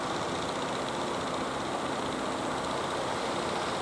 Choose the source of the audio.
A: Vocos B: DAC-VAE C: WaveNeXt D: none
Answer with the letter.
D